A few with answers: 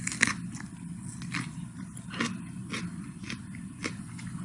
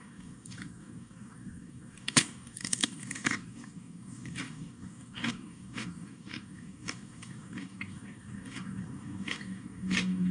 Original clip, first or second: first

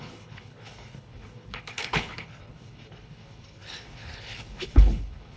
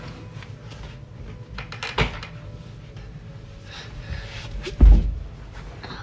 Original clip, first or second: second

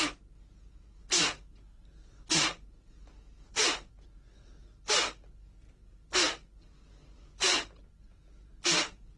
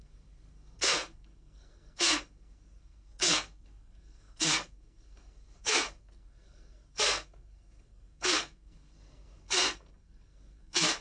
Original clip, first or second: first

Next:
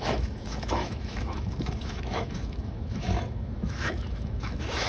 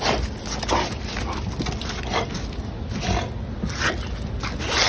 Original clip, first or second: second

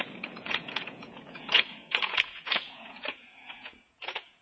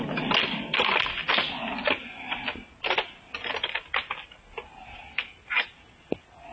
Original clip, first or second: second